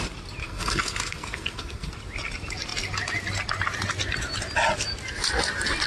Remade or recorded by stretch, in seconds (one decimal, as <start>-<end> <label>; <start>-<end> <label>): 0.0-0.4 recorded; 0.4-1.9 remade; 1.9-5.9 recorded